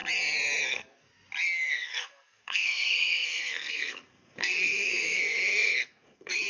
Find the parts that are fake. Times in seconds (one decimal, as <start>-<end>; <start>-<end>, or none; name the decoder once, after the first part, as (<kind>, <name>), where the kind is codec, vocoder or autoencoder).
0.7-1.1 (codec, SNAC); 1.7-6.5